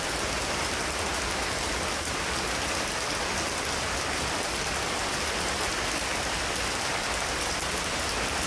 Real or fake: real